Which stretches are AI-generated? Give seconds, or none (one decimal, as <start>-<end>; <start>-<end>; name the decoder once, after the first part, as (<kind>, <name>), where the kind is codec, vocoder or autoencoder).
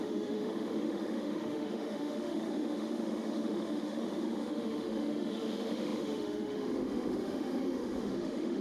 0.0-8.6 (autoencoder, DAC-VAE)